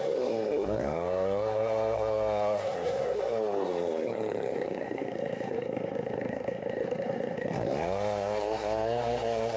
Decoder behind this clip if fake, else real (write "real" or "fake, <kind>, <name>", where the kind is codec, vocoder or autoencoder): fake, codec, SNAC